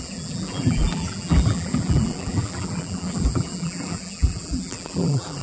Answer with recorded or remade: remade